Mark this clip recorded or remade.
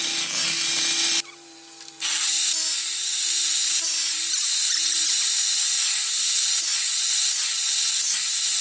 recorded